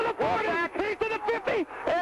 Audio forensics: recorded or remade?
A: recorded